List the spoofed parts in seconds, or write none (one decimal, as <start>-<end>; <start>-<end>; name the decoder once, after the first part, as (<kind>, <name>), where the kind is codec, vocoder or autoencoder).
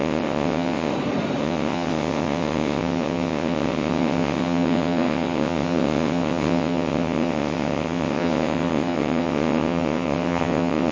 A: 0.0-0.9 (vocoder, WaveNeXt); 1.4-10.9